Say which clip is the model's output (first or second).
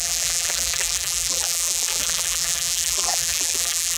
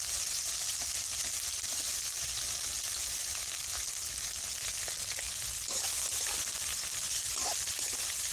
first